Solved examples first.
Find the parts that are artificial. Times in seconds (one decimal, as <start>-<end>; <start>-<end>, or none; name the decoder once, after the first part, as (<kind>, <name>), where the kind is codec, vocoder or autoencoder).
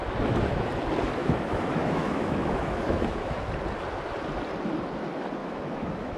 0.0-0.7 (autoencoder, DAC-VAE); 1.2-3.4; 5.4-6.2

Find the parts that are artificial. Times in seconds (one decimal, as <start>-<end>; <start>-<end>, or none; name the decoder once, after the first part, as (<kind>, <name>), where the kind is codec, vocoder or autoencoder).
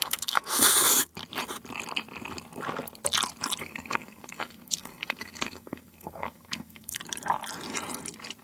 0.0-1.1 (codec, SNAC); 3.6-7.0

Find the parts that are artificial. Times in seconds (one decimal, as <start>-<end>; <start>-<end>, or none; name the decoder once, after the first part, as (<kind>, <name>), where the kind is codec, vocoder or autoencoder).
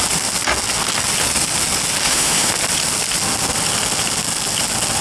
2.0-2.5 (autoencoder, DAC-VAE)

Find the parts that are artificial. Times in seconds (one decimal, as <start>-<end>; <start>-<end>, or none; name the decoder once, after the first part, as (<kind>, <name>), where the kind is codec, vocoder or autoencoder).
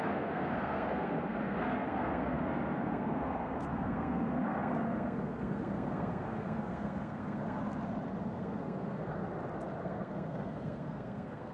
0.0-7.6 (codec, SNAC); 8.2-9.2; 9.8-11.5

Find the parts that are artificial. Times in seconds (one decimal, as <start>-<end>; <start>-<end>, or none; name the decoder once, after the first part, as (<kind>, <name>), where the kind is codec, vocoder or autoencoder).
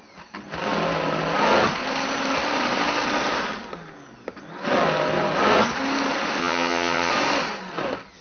6.4-7.1 (vocoder, HiFi-GAN)